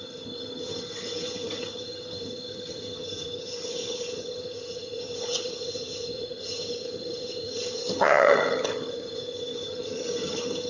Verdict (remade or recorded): remade